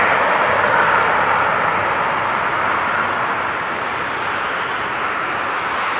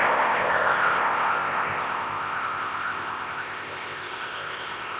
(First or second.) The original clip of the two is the first